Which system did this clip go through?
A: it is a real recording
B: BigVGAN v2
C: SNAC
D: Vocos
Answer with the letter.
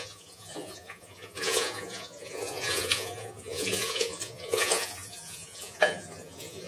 D